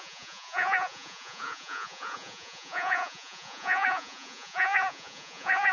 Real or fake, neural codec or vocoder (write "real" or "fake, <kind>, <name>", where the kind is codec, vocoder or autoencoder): fake, vocoder, Vocos